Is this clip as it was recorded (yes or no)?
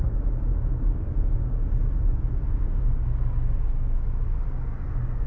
yes